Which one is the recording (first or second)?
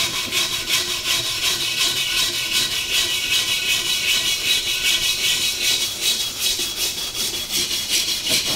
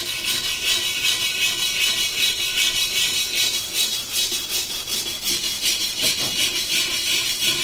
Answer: second